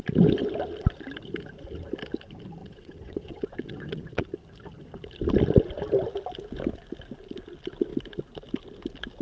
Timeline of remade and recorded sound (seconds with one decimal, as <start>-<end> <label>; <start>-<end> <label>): 0.0-2.6 recorded; 2.6-4.2 remade; 4.2-9.2 recorded